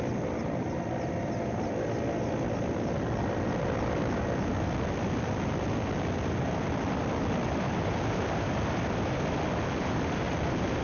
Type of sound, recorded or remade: recorded